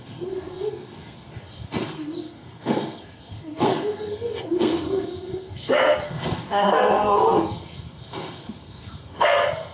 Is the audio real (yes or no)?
no